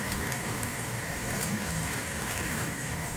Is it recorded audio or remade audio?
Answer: remade